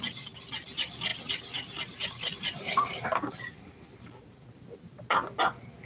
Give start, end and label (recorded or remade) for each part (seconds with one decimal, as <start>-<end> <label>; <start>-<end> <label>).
0.0-1.1 recorded; 1.1-4.6 remade; 4.6-5.8 recorded